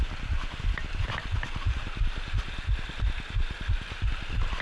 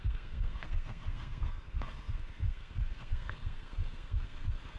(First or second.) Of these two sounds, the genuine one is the first